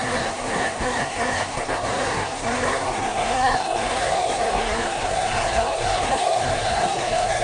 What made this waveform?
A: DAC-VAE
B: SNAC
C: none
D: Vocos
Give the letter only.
B